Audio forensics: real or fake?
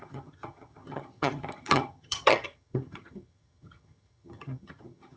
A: fake